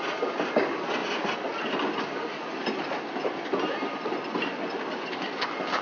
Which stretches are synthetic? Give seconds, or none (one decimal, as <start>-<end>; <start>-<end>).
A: none